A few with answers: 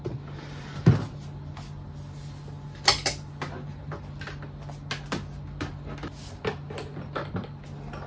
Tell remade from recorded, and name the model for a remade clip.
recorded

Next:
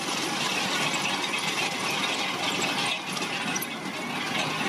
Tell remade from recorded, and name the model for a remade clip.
recorded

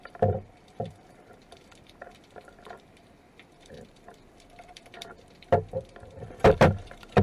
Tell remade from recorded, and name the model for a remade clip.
remade, vocoder, BigVGAN v2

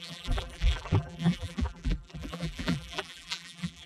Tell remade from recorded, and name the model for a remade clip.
remade, vocoder, BigVGAN v2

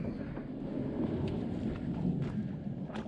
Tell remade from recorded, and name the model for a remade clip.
recorded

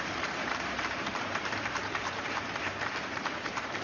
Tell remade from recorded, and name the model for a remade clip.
remade, vocoder, BigVGAN v2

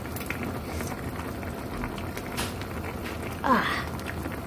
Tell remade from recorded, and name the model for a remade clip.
recorded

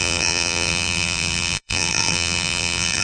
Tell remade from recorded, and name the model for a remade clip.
remade, vocoder, BigVGAN v2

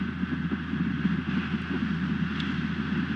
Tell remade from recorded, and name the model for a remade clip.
recorded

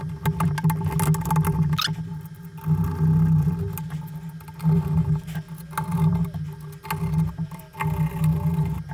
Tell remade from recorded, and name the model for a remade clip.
recorded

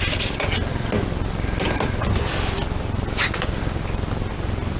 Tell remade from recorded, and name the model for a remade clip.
recorded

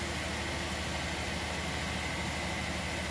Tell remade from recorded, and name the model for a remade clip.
recorded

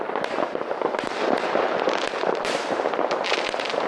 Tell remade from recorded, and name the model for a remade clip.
remade, vocoder, BigVGAN v2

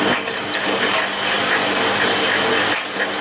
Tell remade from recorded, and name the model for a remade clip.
recorded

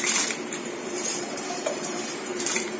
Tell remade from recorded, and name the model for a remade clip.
remade, vocoder, BigVGAN v2